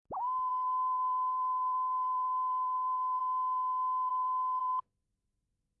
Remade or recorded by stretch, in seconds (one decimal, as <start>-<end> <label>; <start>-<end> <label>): 0.0-0.5 recorded; 0.5-3.2 remade; 3.2-4.1 recorded; 4.1-4.6 remade; 4.6-5.8 recorded

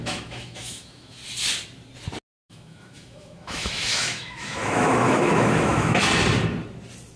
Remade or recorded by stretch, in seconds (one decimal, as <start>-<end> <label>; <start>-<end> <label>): 0.0-1.2 remade; 1.2-2.5 recorded; 2.5-6.0 remade; 6.0-7.2 recorded